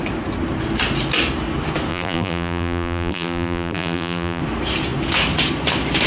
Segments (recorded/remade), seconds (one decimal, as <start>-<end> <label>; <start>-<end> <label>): 0.0-1.9 recorded; 1.9-4.4 remade; 4.4-6.1 recorded